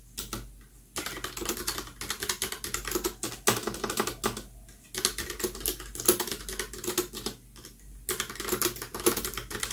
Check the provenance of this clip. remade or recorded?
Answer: recorded